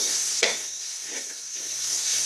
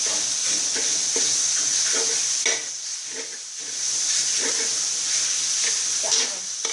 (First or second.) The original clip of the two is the second